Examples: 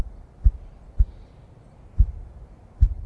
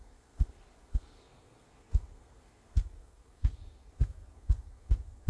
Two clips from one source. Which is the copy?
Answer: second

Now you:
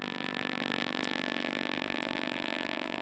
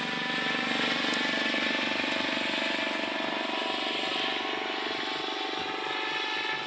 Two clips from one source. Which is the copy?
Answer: first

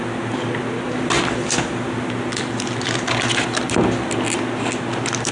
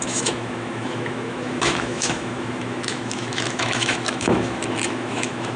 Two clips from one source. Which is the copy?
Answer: second